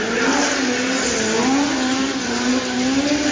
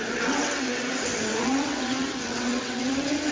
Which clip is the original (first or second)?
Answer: first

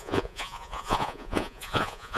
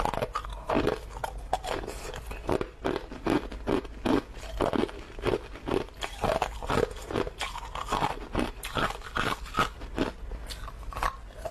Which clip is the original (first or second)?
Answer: second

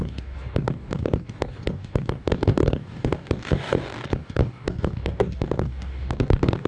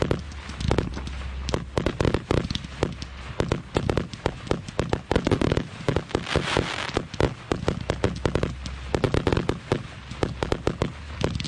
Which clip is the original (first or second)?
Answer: second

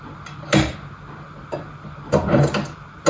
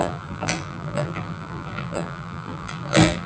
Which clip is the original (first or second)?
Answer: first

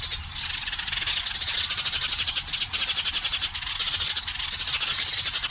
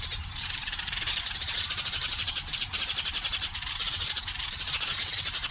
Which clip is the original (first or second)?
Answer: first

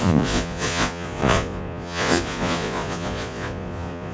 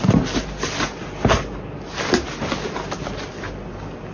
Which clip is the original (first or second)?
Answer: second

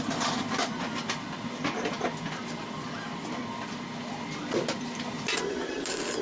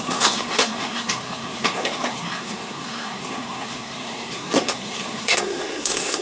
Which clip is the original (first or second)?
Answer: first